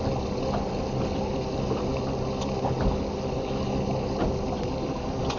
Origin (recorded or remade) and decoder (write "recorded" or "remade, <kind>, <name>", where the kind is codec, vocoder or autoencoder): recorded